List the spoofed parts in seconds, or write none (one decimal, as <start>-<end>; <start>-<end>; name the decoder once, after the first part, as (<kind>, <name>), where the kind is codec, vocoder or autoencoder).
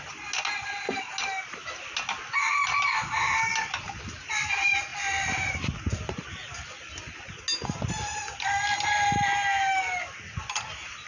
none